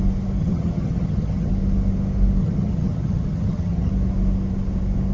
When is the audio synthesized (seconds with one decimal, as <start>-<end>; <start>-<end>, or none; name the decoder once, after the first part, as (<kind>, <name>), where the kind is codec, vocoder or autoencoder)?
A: 0.4-1.5 (vocoder, HiFi-GAN); 2.4-3.9